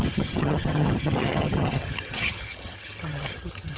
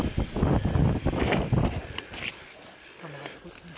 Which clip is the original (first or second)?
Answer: second